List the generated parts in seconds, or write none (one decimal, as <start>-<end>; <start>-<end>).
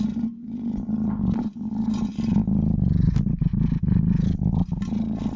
none